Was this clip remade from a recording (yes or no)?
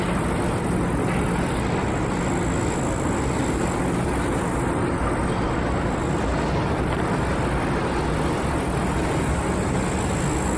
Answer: no